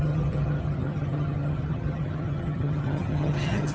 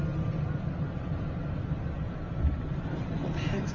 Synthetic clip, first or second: first